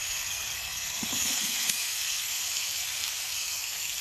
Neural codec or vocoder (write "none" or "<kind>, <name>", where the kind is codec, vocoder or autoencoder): codec, SNAC